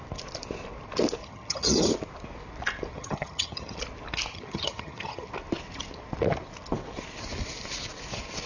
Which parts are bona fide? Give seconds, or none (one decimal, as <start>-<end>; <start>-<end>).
0.0-1.2; 1.9-2.9; 3.8-4.3; 5.3-8.5